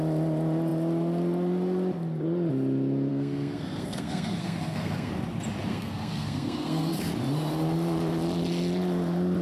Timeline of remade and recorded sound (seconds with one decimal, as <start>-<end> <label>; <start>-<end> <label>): 0.0-3.1 recorded; 3.1-5.1 remade; 5.1-5.7 recorded; 5.7-6.9 remade; 6.9-9.4 recorded